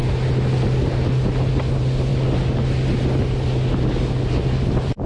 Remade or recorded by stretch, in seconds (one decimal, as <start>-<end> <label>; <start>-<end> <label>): 0.0-5.1 recorded